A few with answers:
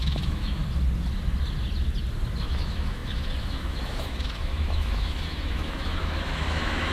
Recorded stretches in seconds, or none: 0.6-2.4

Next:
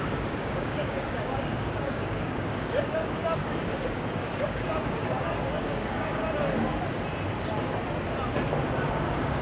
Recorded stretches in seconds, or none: 6.2-8.9

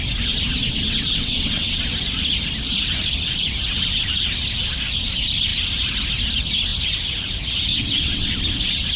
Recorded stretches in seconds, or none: 0.0-0.6; 1.8-7.7; 8.3-9.0